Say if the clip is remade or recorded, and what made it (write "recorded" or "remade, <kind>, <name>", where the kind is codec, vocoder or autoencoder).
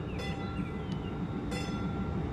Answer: recorded